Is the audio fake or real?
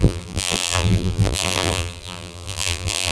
fake